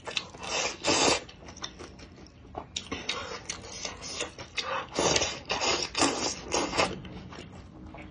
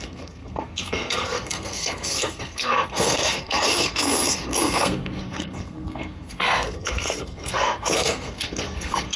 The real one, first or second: first